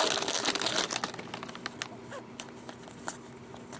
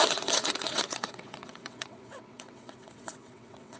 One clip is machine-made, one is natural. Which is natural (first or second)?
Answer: first